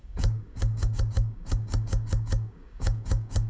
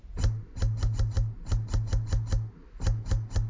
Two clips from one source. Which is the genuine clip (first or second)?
second